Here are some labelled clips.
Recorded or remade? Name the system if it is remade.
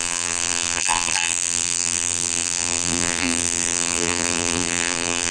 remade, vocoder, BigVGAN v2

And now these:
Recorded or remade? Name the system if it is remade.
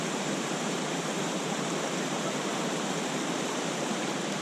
remade, vocoder, BigVGAN v2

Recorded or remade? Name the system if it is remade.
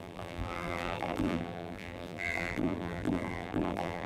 remade, vocoder, BigVGAN v2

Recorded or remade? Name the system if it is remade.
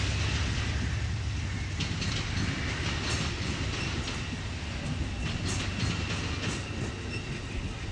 recorded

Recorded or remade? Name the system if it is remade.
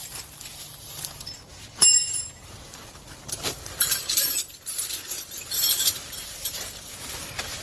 remade, vocoder, BigVGAN v2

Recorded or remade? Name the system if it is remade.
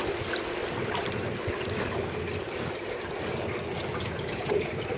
recorded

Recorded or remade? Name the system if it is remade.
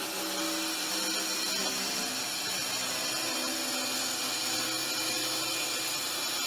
recorded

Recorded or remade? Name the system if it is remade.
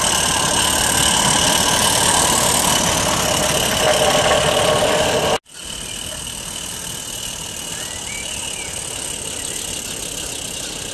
recorded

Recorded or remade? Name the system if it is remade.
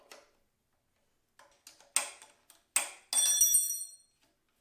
recorded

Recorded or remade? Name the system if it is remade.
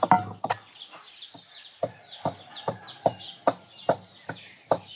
recorded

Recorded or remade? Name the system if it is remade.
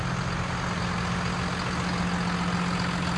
recorded